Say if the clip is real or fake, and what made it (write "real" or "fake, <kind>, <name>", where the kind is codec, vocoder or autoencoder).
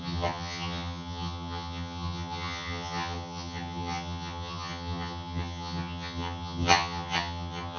fake, vocoder, HiFi-GAN